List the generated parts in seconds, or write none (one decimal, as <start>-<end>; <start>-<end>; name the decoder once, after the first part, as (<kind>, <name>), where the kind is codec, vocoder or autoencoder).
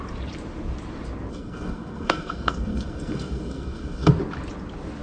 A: 1.3-4.1 (codec, SNAC)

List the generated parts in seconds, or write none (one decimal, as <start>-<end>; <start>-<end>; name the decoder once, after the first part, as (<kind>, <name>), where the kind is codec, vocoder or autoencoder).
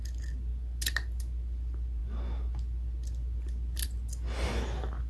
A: none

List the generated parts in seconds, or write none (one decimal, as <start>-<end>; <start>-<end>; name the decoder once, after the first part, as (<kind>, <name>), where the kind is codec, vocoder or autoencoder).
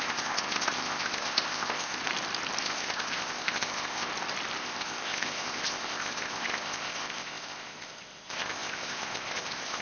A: 0.0-2.0 (codec, ZipCodec); 2.6-4.1; 4.6-9.8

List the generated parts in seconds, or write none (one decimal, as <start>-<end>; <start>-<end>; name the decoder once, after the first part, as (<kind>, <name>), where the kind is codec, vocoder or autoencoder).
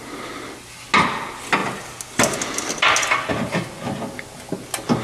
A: none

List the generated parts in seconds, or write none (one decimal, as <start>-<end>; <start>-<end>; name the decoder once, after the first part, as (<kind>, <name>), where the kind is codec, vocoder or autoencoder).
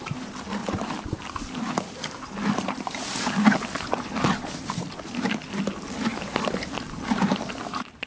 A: 0.6-5.5 (vocoder, BigVGAN v2); 6.1-7.0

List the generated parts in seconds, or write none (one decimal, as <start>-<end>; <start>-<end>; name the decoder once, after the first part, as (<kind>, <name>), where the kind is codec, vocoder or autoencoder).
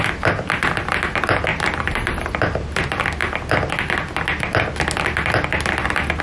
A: none